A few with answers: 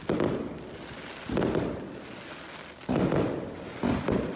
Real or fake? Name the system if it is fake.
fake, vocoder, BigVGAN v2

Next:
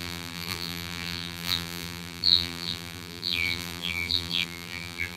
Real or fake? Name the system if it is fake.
fake, vocoder, BigVGAN v2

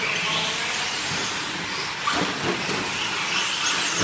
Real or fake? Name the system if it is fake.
real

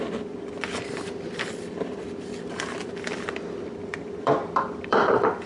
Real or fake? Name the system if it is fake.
fake, vocoder, BigVGAN v2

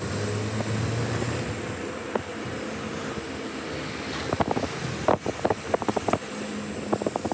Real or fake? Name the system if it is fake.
real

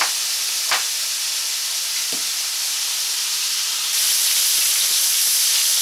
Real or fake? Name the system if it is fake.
real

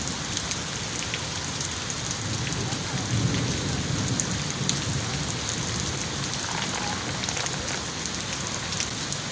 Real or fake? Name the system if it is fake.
real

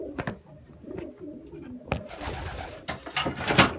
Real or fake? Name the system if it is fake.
real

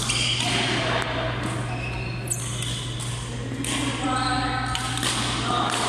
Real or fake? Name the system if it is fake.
real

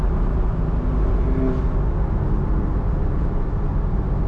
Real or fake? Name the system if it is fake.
real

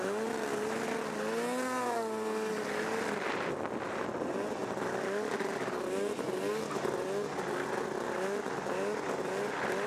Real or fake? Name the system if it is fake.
real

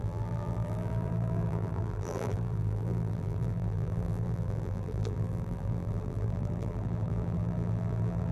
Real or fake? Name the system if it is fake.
fake, vocoder, BigVGAN v2